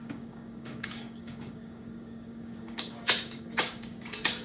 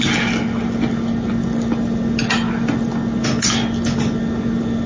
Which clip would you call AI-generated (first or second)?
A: first